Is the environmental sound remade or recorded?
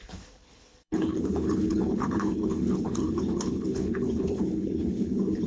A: remade